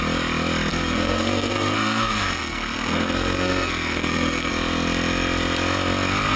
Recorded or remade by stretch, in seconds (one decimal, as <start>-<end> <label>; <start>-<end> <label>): 0.0-0.7 recorded; 0.7-4.5 remade; 4.5-6.4 recorded